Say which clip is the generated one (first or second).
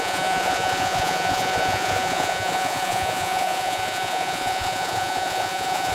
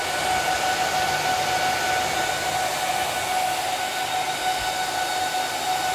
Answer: first